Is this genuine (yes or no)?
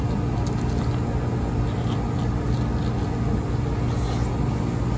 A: yes